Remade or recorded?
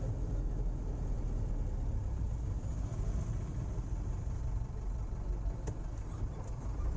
recorded